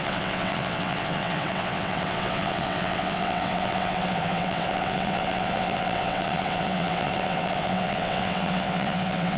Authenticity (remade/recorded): remade